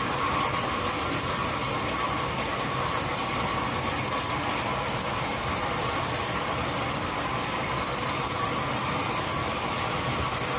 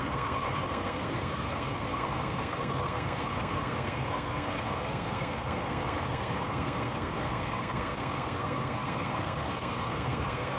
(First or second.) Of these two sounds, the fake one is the second